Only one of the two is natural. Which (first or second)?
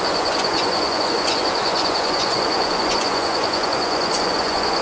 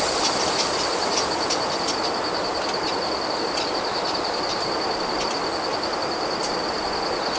second